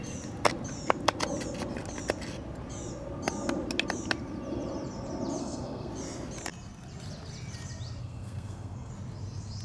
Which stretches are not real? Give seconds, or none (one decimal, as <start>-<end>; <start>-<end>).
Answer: 5.4-5.9; 8.0-8.9